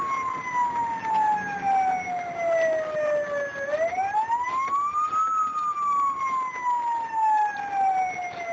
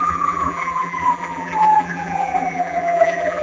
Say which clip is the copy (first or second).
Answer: second